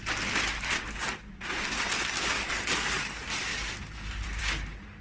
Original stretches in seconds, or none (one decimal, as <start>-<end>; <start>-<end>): 0.0-3.5; 4.4-5.0